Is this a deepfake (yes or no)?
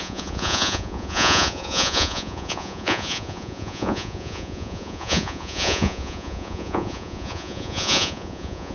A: yes